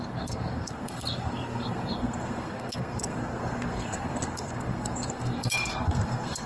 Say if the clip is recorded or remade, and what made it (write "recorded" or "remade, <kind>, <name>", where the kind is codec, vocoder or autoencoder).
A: remade, codec, SNAC